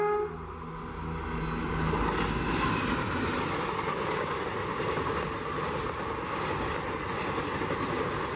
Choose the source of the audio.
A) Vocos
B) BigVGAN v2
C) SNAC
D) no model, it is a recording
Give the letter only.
D